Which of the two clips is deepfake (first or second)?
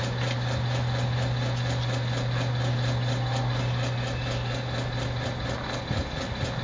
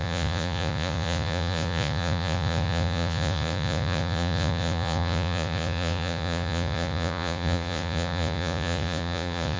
second